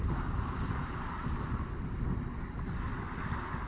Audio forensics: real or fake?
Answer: real